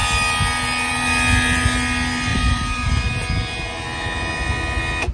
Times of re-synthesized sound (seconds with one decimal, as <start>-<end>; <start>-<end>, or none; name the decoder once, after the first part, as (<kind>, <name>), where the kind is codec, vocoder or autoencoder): 2.3-2.9 (vocoder, BigVGAN v2)